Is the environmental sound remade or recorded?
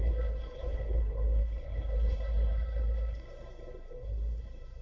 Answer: remade